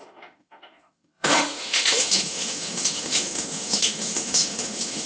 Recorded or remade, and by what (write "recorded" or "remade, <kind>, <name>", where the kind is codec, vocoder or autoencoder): remade, autoencoder, DAC-VAE